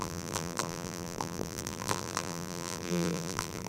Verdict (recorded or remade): remade